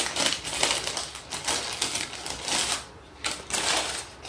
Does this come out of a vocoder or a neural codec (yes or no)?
no